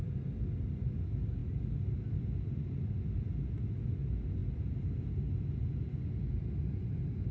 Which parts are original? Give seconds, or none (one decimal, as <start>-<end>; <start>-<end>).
0.0-7.3

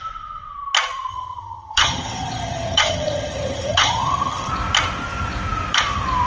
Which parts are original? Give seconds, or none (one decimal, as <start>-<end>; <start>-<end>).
0.0-1.1; 4.5-6.3

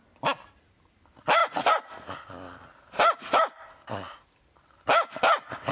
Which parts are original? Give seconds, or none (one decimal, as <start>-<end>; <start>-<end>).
0.0-5.7

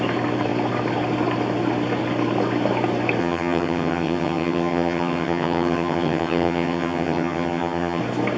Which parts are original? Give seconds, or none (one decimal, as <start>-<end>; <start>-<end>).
0.0-3.2; 8.0-8.4

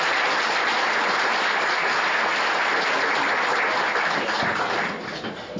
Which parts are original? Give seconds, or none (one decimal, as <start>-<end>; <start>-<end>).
0.0-5.6

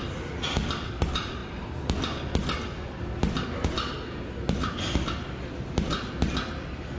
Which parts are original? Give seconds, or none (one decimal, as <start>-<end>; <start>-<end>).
0.0-7.0

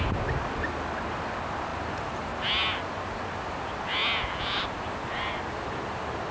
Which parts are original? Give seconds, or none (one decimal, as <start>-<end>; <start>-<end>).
0.0-6.3

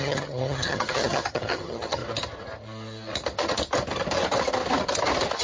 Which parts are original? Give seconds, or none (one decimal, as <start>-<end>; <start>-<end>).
2.0-5.4